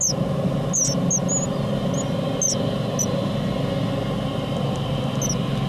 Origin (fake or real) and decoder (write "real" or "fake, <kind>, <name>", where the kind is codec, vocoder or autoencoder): real